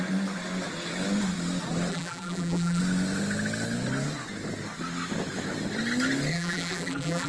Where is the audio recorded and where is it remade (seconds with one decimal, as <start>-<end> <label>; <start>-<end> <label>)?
0.0-1.9 recorded; 1.9-2.8 remade; 2.8-6.3 recorded; 6.3-7.3 remade

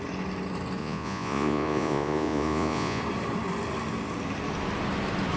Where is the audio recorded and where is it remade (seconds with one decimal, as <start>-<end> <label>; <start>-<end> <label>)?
0.0-0.8 recorded; 0.8-3.0 remade; 3.0-5.4 recorded